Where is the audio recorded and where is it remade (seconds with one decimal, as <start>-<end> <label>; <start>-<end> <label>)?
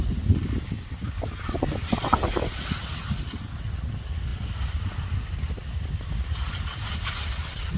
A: 0.0-7.8 recorded